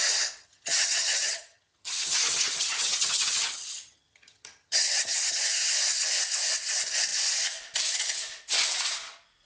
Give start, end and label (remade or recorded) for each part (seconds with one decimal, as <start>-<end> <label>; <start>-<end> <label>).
0.0-0.4 recorded; 0.4-5.4 remade; 5.4-9.5 recorded